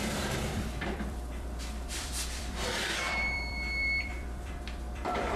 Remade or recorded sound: remade